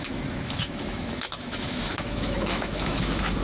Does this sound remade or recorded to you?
remade